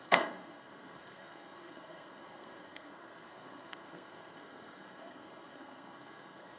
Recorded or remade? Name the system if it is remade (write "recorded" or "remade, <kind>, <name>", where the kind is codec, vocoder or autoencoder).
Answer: remade, codec, SNAC